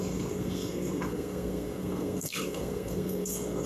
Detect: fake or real fake